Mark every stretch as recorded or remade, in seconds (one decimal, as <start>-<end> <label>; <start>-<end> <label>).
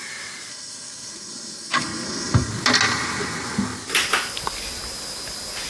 0.0-0.5 recorded; 0.5-2.5 remade; 2.5-5.7 recorded